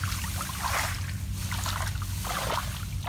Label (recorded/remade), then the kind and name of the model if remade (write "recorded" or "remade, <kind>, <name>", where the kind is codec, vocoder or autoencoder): recorded